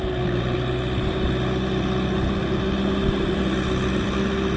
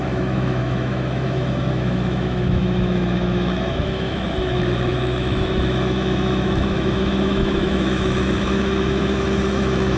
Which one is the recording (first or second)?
first